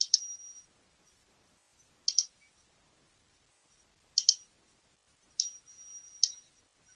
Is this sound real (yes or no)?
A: yes